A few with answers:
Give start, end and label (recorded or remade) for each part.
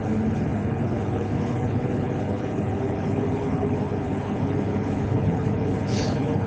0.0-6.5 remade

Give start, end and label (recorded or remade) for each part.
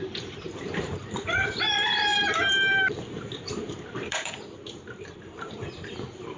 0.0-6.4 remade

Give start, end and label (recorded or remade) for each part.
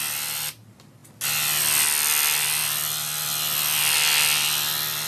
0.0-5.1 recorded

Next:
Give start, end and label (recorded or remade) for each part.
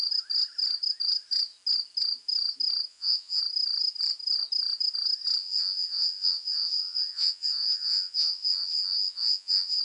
0.0-2.9 recorded; 2.9-3.4 remade; 3.4-5.4 recorded; 5.4-9.8 remade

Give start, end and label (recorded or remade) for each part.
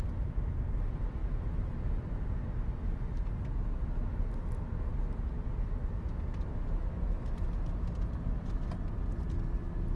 0.0-10.0 recorded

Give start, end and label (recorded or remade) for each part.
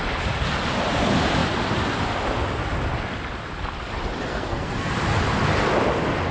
0.0-4.3 recorded; 4.3-4.9 remade; 4.9-6.3 recorded